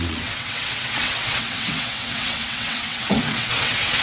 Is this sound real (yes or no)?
no